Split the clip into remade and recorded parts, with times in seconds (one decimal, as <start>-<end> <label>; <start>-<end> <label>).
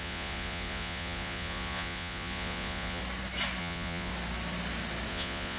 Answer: 0.0-3.0 remade; 3.0-3.6 recorded; 3.6-4.1 remade; 4.1-5.1 recorded; 5.1-5.6 remade